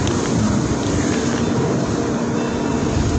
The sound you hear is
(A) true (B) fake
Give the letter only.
A